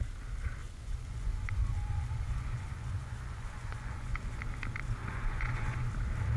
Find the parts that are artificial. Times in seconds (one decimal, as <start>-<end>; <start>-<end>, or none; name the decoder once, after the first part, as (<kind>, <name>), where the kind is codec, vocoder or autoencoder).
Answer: 0.6-4.4 (vocoder, Vocos); 5.0-5.9